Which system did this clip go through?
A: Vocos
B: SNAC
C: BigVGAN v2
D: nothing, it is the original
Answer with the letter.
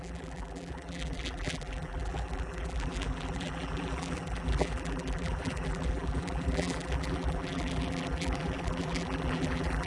C